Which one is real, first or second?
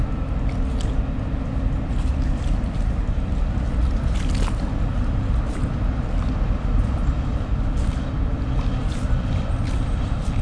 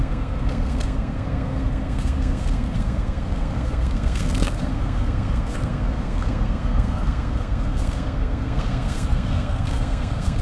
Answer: first